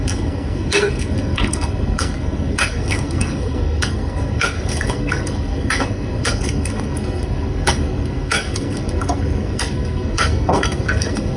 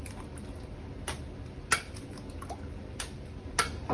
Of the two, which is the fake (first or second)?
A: first